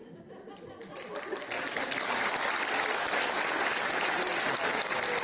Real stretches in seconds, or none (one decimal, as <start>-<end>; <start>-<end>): 0.0-4.3